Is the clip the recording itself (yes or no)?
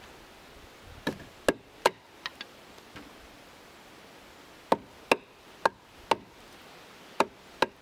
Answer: yes